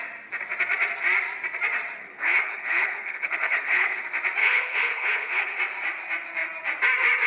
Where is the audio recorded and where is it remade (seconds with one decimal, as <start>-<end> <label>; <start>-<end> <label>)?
0.0-2.0 recorded; 2.0-4.0 remade; 4.0-4.4 recorded; 4.4-5.6 remade; 5.6-7.3 recorded